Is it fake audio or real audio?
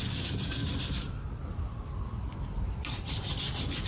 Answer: real